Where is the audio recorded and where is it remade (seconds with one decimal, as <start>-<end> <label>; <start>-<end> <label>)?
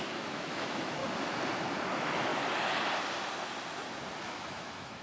0.0-1.0 remade; 1.0-1.9 recorded; 1.9-2.3 remade; 2.3-4.2 recorded; 4.2-5.0 remade